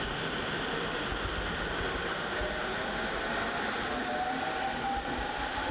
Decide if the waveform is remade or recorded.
recorded